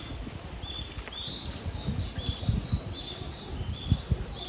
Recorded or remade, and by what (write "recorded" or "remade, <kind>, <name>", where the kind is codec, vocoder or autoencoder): recorded